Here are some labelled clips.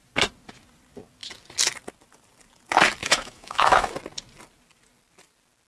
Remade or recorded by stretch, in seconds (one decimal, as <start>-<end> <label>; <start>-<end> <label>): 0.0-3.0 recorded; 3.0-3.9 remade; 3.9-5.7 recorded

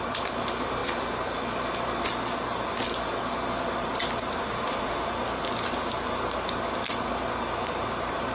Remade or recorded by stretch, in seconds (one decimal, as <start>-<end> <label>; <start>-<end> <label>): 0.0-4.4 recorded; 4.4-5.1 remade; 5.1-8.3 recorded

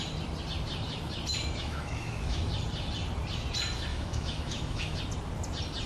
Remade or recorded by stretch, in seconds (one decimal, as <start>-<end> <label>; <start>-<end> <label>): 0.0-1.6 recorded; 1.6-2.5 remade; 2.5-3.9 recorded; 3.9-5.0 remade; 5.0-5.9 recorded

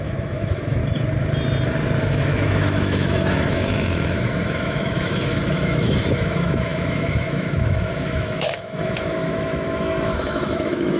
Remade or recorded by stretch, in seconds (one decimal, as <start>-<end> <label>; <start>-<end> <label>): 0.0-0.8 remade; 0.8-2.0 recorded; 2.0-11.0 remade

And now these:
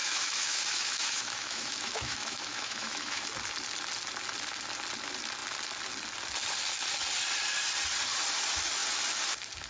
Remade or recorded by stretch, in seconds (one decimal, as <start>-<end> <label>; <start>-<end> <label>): 0.0-3.3 remade; 3.3-9.7 recorded